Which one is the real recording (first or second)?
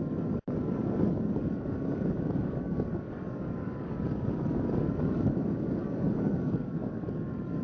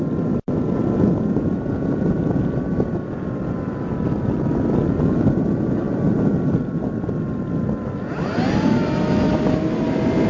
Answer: second